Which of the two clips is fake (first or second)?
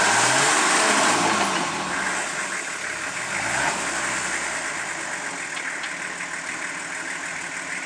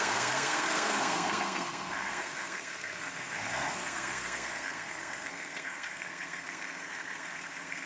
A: second